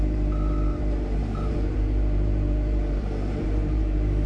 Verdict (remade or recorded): remade